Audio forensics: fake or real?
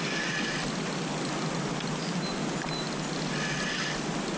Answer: real